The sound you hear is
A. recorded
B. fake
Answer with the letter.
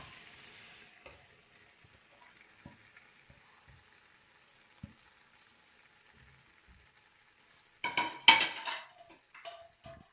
A